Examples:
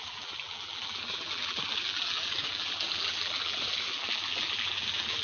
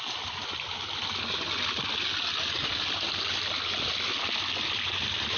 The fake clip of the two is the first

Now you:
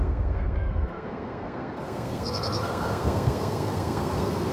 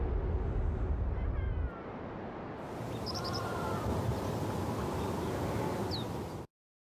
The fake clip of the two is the first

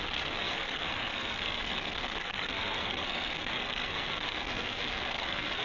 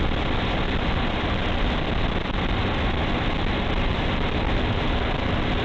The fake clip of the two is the first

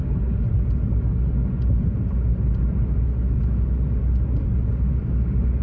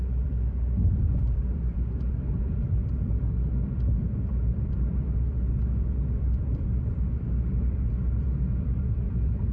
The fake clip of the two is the second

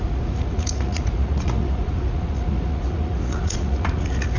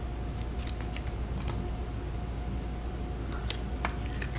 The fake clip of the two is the first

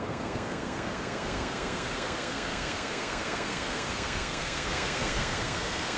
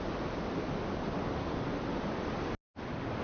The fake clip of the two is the first